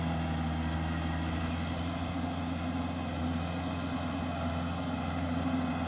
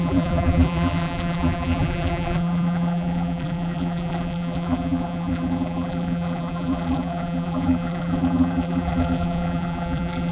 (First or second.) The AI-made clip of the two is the second